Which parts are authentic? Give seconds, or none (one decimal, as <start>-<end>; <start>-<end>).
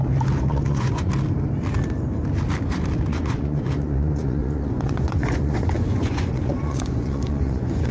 0.0-0.5; 1.1-3.1